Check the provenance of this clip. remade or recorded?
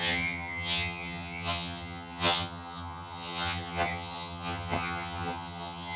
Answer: remade